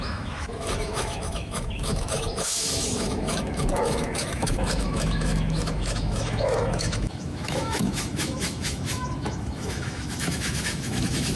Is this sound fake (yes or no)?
yes